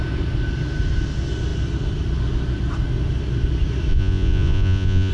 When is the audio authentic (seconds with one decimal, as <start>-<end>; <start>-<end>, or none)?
0.0-3.9